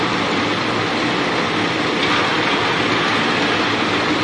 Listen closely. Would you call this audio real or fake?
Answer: real